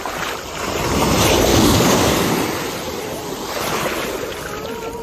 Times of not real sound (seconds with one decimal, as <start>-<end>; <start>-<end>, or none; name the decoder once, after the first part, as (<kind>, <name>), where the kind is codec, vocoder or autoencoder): 1.5-2.3 (codec, DAC)